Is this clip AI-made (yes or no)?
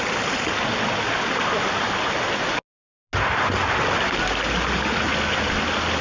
no